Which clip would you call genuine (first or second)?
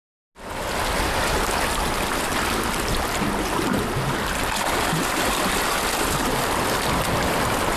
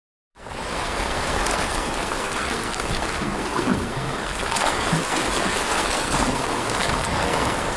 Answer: first